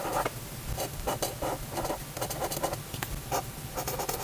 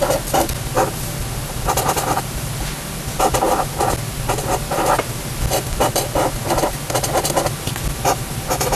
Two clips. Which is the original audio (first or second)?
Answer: second